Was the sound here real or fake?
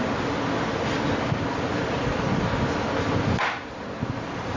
real